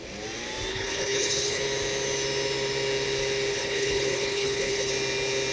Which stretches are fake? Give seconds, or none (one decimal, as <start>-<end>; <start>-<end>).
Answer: 0.7-1.6; 3.5-4.9